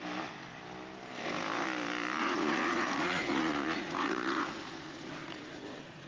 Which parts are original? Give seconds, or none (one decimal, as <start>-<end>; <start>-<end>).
0.0-2.2